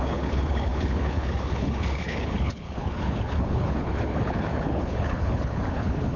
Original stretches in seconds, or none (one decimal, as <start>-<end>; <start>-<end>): none